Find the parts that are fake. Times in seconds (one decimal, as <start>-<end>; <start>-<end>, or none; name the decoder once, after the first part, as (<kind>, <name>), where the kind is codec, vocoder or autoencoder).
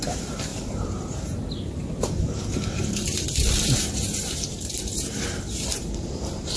0.0-6.6 (vocoder, BigVGAN v2)